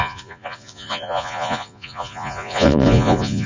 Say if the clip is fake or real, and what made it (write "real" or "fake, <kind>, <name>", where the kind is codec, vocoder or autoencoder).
fake, vocoder, Vocos